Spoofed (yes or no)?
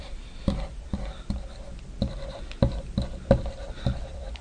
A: no